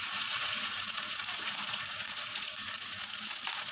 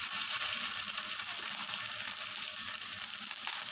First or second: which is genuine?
second